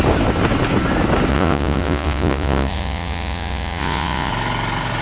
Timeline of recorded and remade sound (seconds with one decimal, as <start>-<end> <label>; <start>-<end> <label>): 0.0-1.3 recorded; 1.3-4.3 remade; 4.3-5.0 recorded